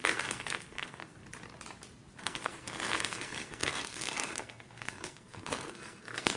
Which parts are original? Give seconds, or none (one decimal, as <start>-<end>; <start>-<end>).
1.2-2.2